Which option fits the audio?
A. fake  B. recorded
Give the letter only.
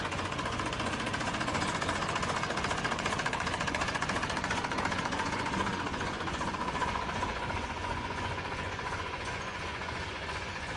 A